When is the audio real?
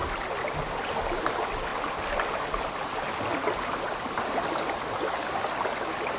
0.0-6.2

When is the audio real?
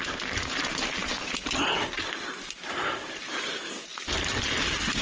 0.0-5.0